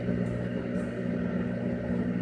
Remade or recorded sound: recorded